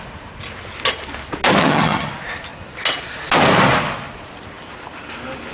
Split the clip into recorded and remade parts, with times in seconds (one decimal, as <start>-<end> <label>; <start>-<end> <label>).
0.0-1.6 recorded; 1.6-2.1 remade; 2.1-5.5 recorded